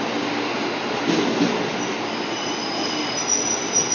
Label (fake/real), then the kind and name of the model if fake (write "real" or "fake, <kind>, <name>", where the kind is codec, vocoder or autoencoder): real